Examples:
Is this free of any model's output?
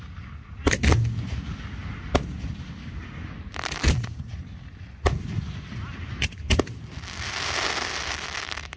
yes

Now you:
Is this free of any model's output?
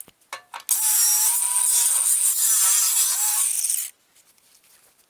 yes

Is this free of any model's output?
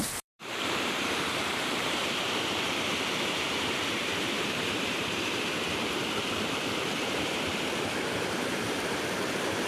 no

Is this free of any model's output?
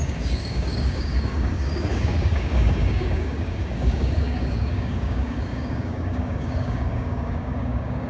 no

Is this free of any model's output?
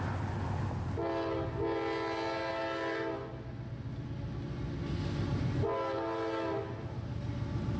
yes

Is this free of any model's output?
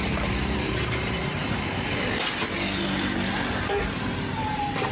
no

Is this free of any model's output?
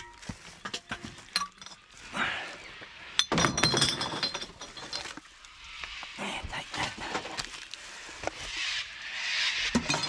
yes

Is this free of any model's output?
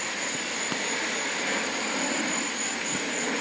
yes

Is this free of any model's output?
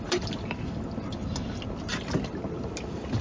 yes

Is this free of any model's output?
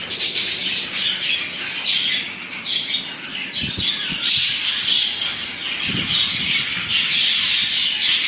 yes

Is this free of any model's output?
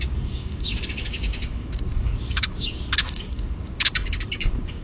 no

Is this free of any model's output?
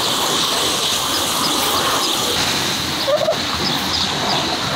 yes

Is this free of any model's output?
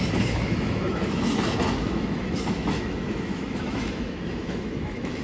no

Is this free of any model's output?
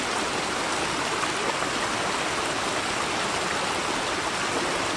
yes